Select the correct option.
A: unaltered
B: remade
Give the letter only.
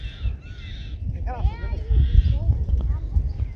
A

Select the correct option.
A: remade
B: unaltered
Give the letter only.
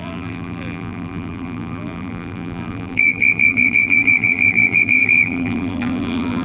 A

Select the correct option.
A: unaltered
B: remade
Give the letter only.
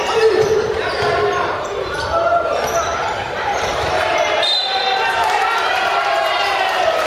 B